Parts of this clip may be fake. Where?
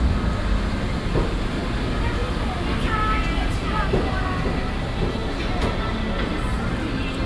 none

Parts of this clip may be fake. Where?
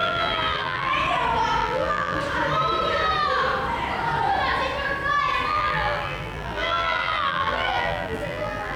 0.0-0.9 (vocoder, BigVGAN v2); 1.6-2.2; 5.5-8.8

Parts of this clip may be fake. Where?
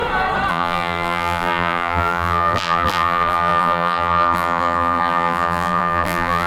0.5-6.5 (vocoder, BigVGAN v2)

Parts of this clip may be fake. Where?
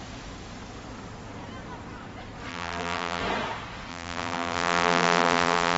2.5-3.2 (vocoder, BigVGAN v2); 3.9-5.8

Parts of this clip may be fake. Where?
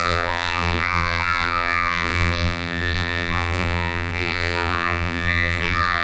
0.0-6.0 (vocoder, BigVGAN v2)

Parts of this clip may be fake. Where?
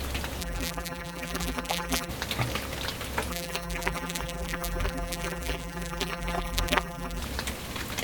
0.4-2.1 (vocoder, BigVGAN v2); 3.3-7.2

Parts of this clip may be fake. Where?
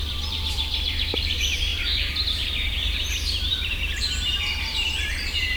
0.0-5.6 (vocoder, BigVGAN v2)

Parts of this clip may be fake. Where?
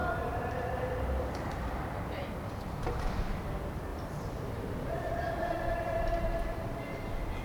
0.0-2.2 (vocoder, BigVGAN v2); 3.9-6.1